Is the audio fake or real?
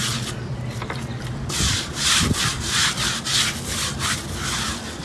real